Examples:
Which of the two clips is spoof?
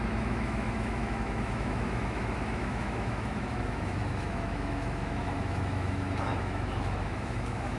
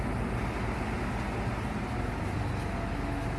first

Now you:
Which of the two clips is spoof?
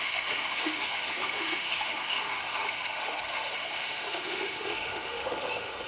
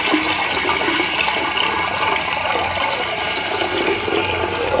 first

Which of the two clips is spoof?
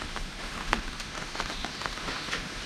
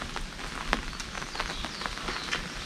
first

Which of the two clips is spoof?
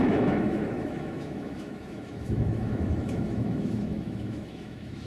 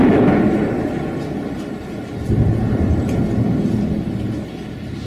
first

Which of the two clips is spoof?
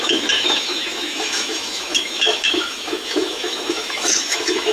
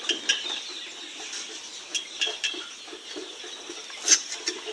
first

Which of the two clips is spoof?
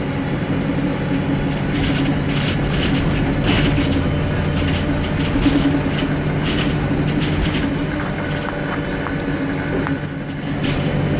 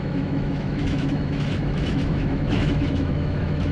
second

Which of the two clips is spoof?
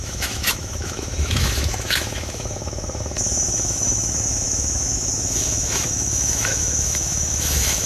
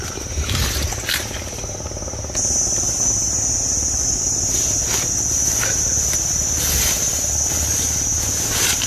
first